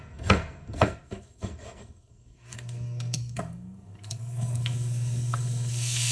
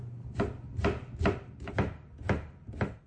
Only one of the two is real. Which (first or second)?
second